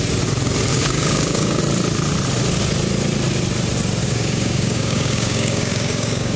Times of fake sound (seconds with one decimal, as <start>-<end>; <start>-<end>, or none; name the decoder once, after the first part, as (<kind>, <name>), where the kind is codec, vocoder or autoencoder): 0.7-1.6 (codec, DAC); 4.0-6.4